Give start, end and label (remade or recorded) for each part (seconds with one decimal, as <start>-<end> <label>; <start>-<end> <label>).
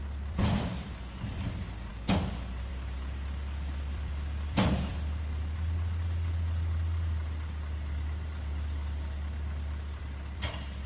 0.0-1.9 remade; 1.9-2.7 recorded; 2.7-10.9 remade